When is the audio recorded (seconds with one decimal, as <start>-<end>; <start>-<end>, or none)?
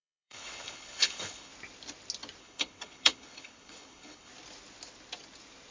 1.5-2.4; 4.3-5.7